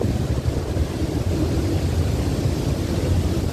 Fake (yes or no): no